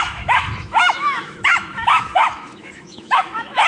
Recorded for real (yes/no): no